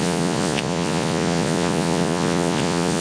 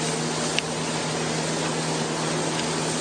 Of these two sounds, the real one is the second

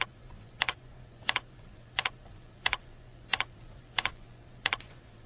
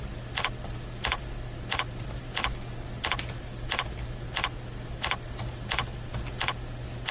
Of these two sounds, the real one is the second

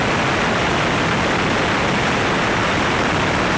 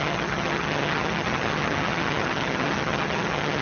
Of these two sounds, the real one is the first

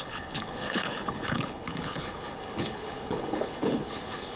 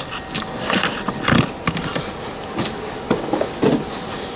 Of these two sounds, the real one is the second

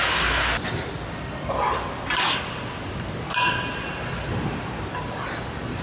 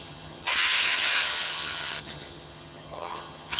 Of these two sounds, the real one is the first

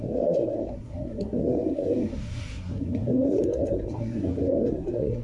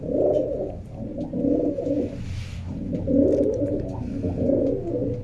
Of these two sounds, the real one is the second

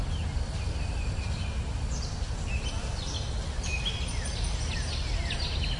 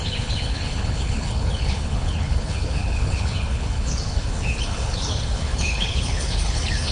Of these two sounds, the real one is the first